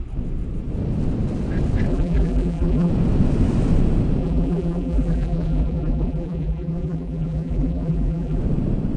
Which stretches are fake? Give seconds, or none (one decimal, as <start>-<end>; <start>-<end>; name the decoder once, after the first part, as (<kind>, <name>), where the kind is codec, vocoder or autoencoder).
1.9-2.9 (vocoder, BigVGAN v2); 4.2-8.4